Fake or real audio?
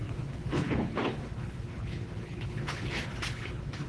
fake